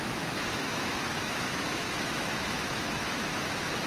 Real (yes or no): no